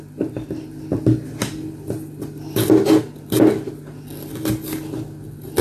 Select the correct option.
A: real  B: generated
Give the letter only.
A